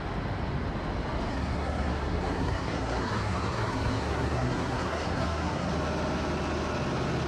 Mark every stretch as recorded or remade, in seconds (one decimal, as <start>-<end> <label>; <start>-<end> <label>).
0.0-1.3 recorded; 1.3-5.7 remade; 5.7-7.3 recorded